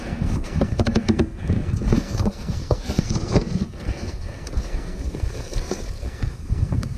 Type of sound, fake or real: fake